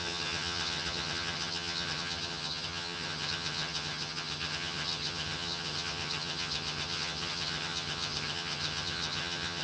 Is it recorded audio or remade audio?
remade